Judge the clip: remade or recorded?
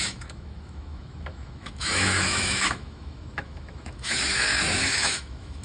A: remade